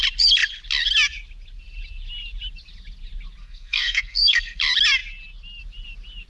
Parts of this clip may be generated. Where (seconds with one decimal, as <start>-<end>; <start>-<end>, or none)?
3.4-4.6